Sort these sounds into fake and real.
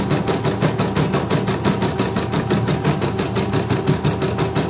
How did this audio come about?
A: real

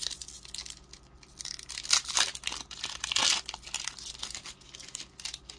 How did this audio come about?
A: real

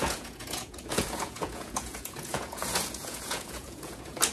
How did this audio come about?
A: fake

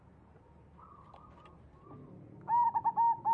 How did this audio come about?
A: real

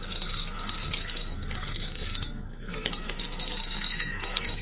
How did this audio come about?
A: fake